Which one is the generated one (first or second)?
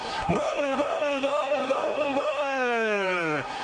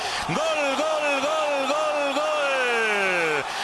first